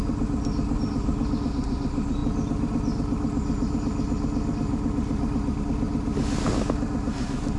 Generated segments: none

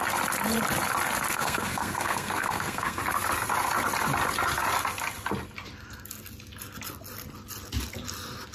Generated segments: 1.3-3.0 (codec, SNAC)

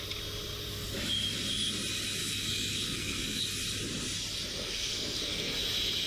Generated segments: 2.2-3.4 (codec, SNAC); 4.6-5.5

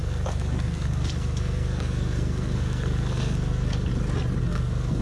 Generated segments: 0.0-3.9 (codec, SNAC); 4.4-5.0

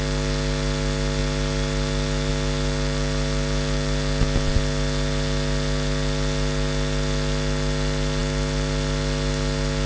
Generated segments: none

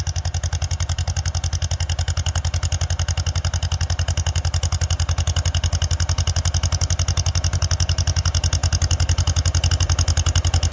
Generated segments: none

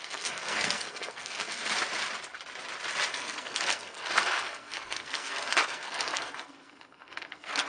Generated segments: 0.0-1.6 (codec, SNAC); 3.1-7.7

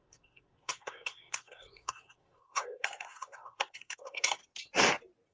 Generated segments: 0.0-4.4 (codec, SNAC)